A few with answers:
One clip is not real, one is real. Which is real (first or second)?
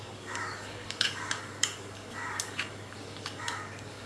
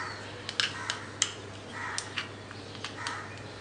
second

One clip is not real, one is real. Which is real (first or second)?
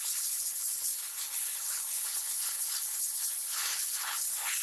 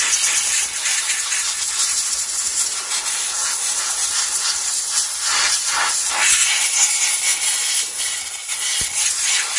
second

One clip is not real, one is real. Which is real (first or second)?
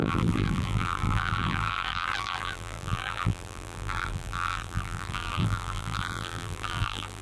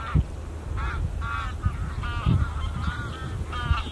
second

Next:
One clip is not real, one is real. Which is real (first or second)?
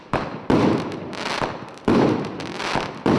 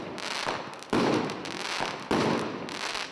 second